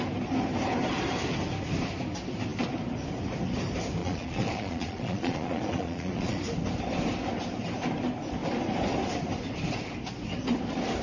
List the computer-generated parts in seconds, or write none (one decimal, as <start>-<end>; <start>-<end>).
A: 4.0-6.4